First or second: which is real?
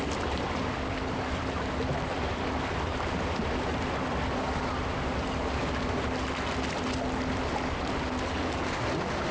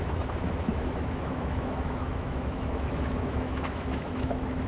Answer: first